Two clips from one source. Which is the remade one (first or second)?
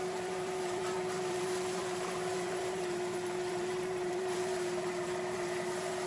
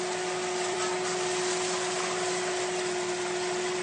first